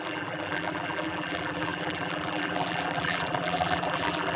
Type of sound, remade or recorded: remade